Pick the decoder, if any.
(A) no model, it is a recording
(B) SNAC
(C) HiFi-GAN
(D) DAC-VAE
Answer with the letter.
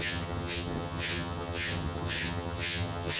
C